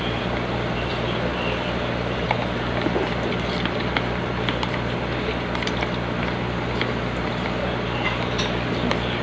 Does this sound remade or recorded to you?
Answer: recorded